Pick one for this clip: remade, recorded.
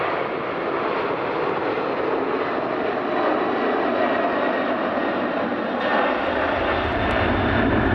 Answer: recorded